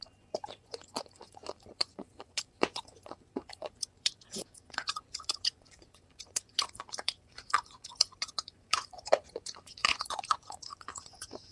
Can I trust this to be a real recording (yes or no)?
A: no